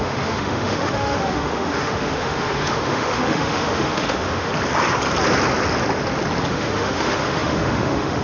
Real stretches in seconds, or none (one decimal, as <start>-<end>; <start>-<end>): 4.5-6.5